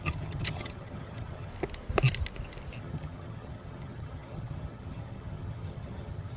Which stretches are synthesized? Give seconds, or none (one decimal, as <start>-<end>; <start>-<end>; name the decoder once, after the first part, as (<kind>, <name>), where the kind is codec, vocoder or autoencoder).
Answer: 0.0-1.5 (vocoder, HiFi-GAN); 2.8-6.4